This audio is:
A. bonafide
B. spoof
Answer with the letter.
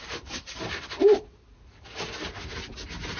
A